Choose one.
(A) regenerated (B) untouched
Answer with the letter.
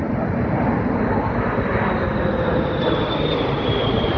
B